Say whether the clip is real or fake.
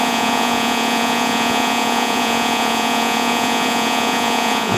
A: fake